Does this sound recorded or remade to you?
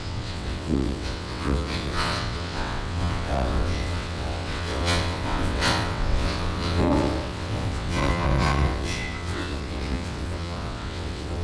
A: remade